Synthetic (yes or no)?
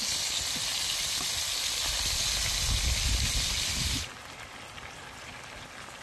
no